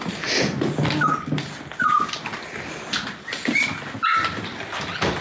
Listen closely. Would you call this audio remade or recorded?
recorded